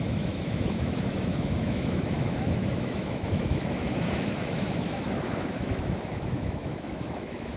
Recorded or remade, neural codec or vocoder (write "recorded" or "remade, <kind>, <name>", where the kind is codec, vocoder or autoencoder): remade, autoencoder, DAC-VAE